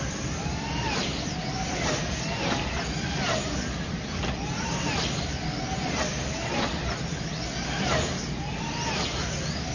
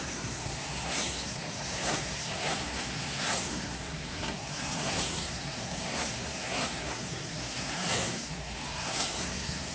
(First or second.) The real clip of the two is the first